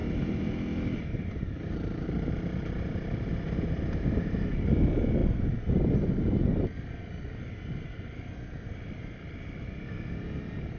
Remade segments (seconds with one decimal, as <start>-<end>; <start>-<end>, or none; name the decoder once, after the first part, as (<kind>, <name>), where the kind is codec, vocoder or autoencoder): none